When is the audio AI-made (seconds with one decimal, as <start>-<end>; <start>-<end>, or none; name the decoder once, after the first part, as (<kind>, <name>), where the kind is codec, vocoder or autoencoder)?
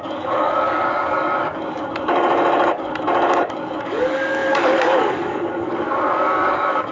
0.0-6.9 (codec, DAC)